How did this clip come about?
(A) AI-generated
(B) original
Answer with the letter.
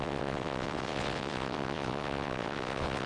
A